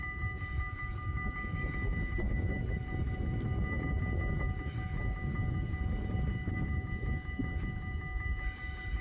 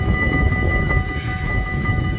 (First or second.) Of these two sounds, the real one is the first